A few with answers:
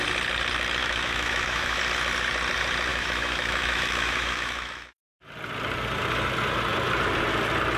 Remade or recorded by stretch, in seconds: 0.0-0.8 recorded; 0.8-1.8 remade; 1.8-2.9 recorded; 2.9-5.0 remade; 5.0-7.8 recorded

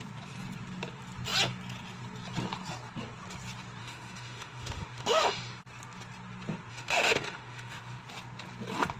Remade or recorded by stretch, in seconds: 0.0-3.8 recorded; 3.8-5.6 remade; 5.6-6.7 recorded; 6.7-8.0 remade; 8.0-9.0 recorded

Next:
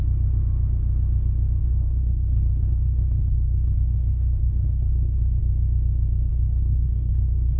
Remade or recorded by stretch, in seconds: 0.0-1.6 recorded; 1.6-5.4 remade; 5.4-6.3 recorded; 6.3-7.6 remade